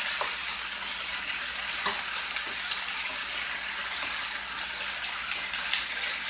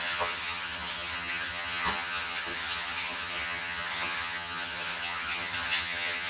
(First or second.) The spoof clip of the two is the second